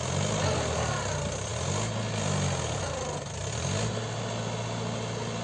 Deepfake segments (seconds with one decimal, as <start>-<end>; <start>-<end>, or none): none